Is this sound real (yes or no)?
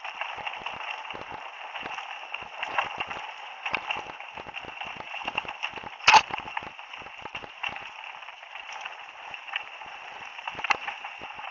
yes